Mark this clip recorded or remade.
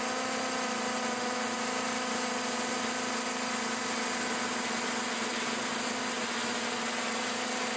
recorded